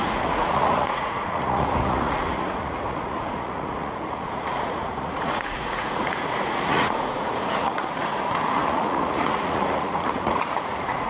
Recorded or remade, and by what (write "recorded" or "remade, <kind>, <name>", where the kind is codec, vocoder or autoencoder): remade, vocoder, Vocos